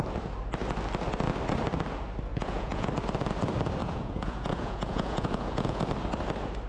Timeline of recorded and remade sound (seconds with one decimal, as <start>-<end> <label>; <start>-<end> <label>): 0.0-2.3 recorded; 2.3-2.9 remade; 2.9-3.8 recorded; 3.8-5.8 remade; 5.8-6.7 recorded